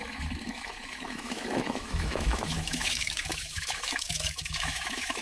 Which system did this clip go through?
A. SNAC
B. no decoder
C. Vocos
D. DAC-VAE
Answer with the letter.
D